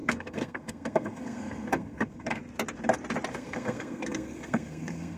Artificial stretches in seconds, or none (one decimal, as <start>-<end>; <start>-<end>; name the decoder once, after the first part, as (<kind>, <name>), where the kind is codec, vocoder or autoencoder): 0.0-2.4 (codec, SNAC); 3.3-5.2